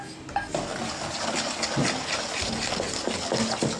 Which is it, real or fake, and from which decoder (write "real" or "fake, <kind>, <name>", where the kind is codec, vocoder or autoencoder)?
real